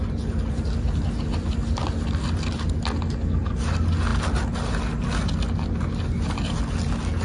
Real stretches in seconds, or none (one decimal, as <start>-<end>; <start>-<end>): 0.0-7.2